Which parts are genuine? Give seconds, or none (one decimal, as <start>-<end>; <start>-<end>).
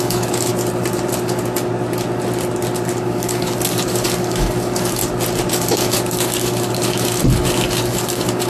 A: 0.5-2.9; 5.0-5.5